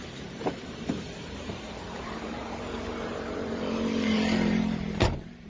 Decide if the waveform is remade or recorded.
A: remade